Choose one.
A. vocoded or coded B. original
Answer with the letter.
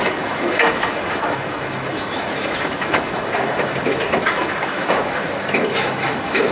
A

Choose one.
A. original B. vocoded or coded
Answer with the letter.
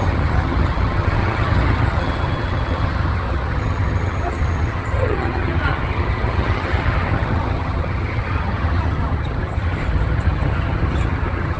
B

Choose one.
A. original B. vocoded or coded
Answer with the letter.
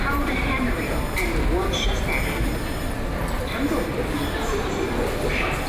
A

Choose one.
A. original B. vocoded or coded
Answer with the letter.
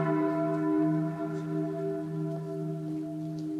A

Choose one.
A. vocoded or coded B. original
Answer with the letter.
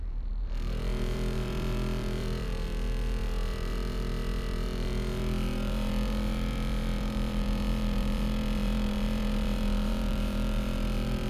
A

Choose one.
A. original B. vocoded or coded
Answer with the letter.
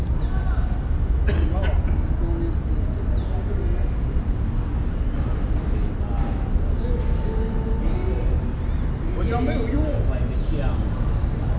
A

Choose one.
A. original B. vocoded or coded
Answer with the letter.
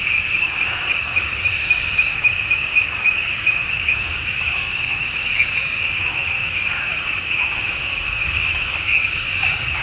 B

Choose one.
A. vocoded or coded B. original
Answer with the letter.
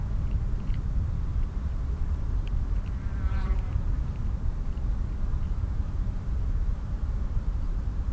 A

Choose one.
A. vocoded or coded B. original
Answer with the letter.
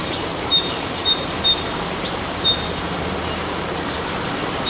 A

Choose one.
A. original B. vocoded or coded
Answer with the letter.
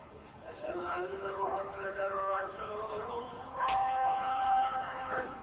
B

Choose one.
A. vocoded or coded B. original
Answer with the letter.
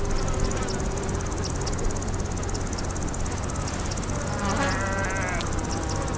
B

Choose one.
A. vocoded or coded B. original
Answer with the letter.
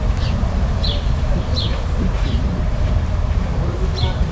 A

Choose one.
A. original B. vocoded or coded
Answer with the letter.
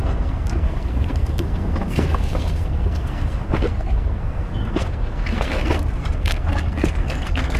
B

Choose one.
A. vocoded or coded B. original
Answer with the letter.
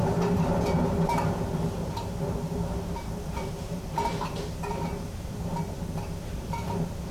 A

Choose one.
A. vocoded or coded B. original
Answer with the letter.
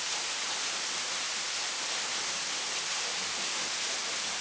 B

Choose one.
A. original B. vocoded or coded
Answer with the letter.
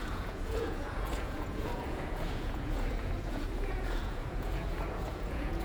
B